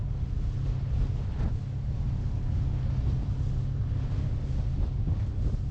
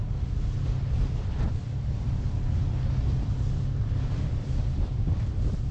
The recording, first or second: first